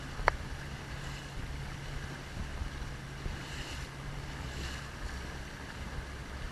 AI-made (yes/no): no